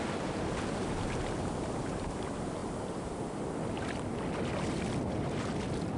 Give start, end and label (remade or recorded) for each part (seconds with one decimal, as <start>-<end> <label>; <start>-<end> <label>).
0.0-6.0 recorded